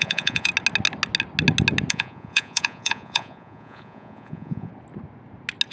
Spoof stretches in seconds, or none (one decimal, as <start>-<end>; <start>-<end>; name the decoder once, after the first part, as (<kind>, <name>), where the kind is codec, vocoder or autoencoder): 0.0-0.5 (vocoder, Vocos); 1.9-4.7